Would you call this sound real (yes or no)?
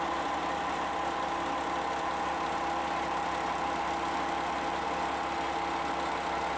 yes